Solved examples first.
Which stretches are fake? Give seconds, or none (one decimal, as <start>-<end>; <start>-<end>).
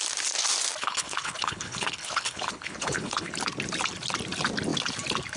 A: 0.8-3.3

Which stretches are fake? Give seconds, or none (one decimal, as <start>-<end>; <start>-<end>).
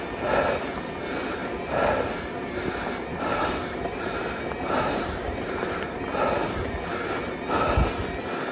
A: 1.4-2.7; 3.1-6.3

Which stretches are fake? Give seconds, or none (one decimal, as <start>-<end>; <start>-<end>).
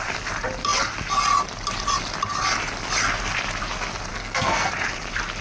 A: 4.1-4.7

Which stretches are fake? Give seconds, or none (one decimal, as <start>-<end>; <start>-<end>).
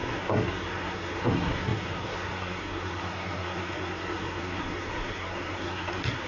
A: 0.0-6.3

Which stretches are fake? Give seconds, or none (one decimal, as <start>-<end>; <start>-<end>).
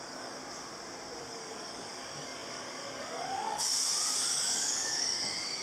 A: 0.0-0.4; 1.2-5.6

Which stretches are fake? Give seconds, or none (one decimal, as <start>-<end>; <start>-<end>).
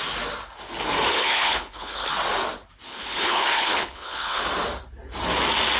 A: 1.1-2.1; 2.9-4.4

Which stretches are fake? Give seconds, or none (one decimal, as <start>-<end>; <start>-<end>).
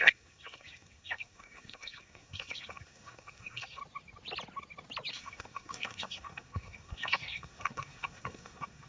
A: 0.0-3.8; 5.1-8.9